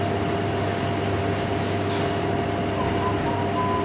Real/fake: real